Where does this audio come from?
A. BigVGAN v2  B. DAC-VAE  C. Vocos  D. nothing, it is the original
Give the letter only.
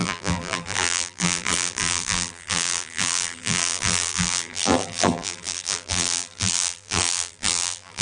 A